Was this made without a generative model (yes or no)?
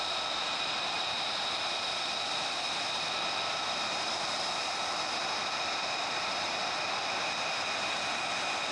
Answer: yes